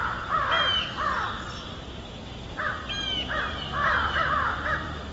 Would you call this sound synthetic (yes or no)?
yes